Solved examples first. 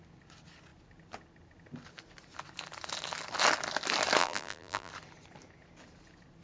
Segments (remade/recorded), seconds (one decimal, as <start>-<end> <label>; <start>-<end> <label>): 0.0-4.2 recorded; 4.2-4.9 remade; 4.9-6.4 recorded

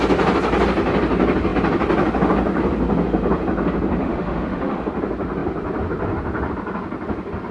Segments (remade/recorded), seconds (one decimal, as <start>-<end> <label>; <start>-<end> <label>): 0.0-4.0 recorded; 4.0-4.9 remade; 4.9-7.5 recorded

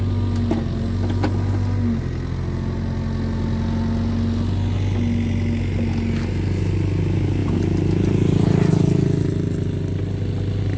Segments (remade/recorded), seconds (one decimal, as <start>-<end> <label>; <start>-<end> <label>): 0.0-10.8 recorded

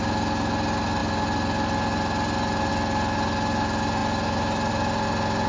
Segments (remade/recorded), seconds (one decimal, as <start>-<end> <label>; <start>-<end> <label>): 0.0-5.5 recorded